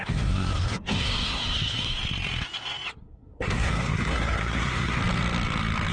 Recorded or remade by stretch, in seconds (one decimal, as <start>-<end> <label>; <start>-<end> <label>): 0.0-2.0 remade; 2.0-2.9 recorded; 2.9-5.0 remade; 5.0-5.9 recorded